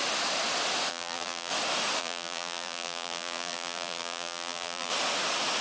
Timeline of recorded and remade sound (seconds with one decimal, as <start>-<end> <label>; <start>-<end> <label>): 0.0-0.9 recorded; 0.9-1.5 remade; 1.5-2.0 recorded; 2.0-4.9 remade; 4.9-5.6 recorded